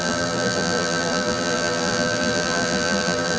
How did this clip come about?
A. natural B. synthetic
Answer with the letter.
B